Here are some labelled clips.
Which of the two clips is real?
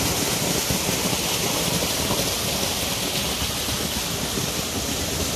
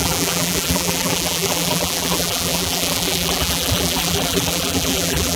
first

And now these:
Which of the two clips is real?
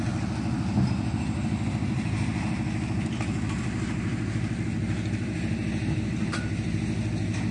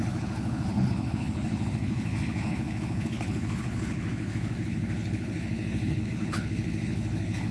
first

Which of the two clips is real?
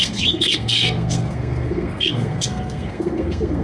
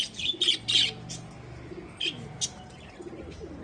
second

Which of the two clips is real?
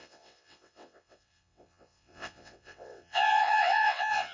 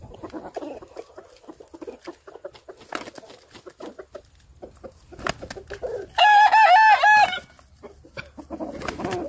second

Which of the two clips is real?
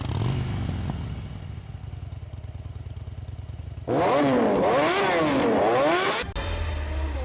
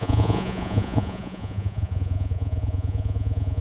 first